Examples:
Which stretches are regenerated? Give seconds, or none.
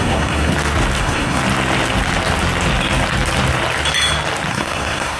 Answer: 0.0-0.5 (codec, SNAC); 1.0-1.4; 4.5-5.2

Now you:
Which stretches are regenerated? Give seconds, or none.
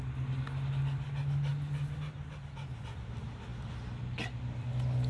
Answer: none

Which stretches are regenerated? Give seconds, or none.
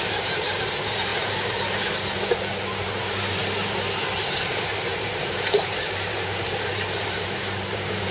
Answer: 0.0-1.1 (vocoder, BigVGAN v2); 2.4-8.1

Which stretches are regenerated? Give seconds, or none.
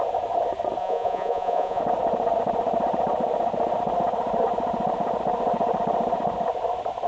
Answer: 0.8-1.8 (vocoder, Vocos)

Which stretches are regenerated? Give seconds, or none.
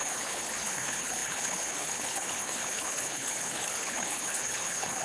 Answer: 0.0-5.0 (codec, HILCodec)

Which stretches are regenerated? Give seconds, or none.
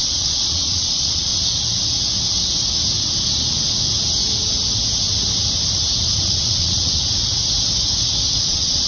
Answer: 0.0-1.3 (vocoder, Vocos); 6.2-7.2; 8.4-8.9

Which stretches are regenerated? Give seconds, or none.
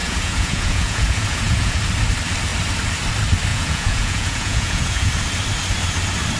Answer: 0.0-1.8 (vocoder, Vocos); 3.5-5.1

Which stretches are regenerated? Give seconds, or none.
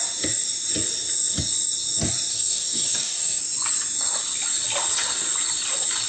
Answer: 2.3-3.4 (codec, DAC)